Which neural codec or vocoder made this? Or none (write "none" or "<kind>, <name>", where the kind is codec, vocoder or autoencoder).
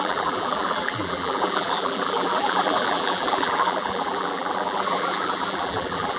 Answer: vocoder, BigVGAN v2